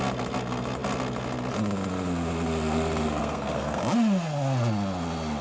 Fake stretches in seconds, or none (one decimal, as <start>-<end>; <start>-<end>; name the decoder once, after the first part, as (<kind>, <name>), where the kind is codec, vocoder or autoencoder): 3.2-3.8 (codec, SNAC)